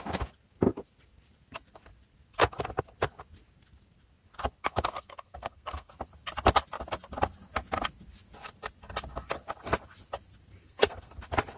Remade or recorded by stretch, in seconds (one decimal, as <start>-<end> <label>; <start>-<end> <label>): 0.0-4.6 recorded; 4.6-5.9 remade; 5.9-10.6 recorded; 10.6-11.1 remade; 11.1-11.6 recorded